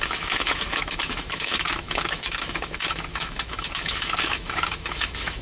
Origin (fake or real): fake